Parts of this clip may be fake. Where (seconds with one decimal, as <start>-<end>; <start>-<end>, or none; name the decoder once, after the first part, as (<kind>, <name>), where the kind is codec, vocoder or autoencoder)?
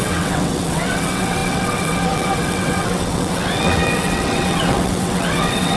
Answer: 0.0-5.8 (vocoder, WaveNeXt)